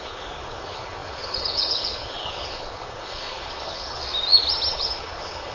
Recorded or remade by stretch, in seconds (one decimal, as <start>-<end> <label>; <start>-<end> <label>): 0.0-4.0 remade; 4.0-4.7 recorded; 4.7-5.5 remade